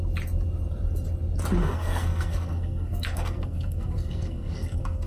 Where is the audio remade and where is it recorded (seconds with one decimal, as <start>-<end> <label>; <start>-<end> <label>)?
0.0-1.6 recorded; 1.6-5.1 remade